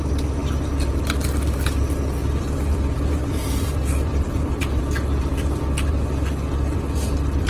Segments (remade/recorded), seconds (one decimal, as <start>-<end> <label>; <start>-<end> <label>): 0.0-2.2 recorded; 2.2-4.8 remade; 4.8-7.5 recorded